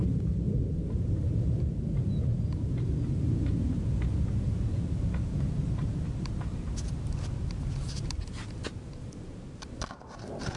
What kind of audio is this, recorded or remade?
recorded